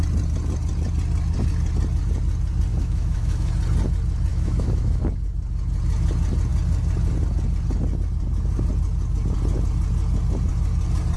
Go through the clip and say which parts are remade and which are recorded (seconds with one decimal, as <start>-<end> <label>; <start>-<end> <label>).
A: 0.0-2.7 recorded; 2.7-3.5 remade; 3.5-4.3 recorded; 4.3-5.0 remade; 5.0-11.2 recorded